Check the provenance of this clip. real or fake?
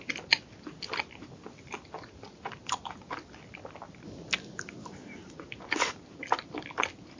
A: real